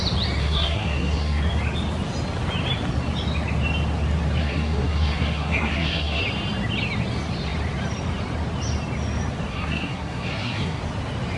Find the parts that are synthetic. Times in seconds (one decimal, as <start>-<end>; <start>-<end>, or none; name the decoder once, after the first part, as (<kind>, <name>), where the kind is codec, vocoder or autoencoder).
0.4-1.4 (codec, SNAC); 4.4-6.2; 9.5-10.8